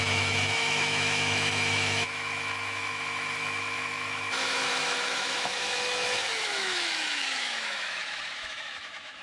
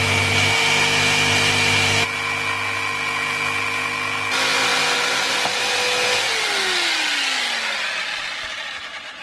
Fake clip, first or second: first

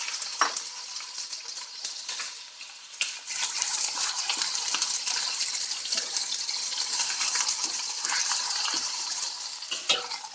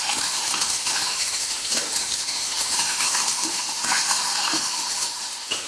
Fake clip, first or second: second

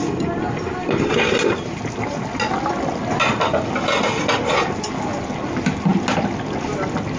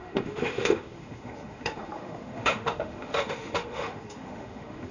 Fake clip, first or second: second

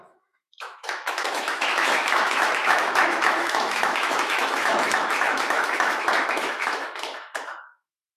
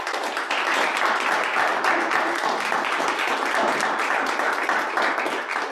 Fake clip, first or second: first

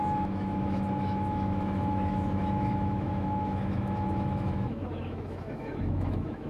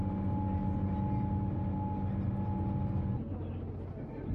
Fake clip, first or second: first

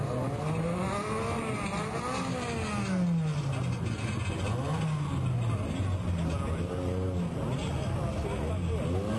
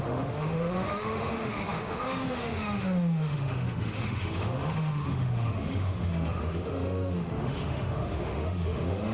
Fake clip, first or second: second